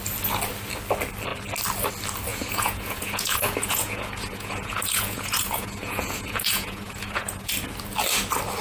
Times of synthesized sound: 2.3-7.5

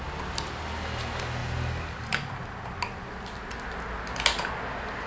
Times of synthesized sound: none

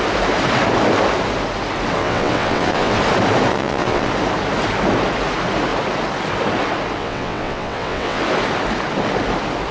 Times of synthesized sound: 2.0-3.0; 3.5-4.1; 7.0-8.2

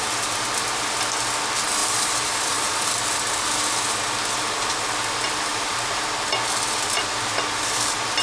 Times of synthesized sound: 1.8-2.9; 5.5-6.1